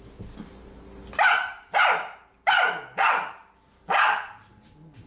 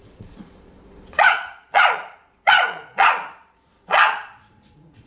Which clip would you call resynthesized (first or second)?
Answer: second